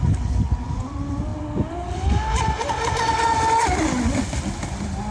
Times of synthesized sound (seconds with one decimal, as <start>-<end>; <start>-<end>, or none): none